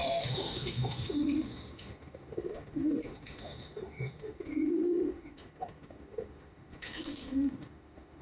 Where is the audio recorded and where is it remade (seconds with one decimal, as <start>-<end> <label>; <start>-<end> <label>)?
0.0-8.2 remade